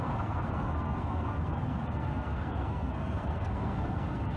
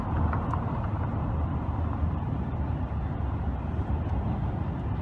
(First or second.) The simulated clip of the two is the first